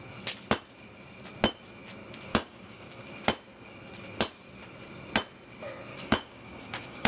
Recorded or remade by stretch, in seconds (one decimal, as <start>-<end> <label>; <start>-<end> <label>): 0.0-2.3 recorded; 2.3-3.1 remade; 3.1-5.9 recorded; 5.9-7.1 remade